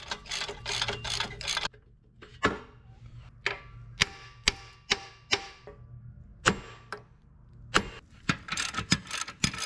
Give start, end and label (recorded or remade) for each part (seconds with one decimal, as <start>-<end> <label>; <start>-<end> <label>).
0.0-9.7 recorded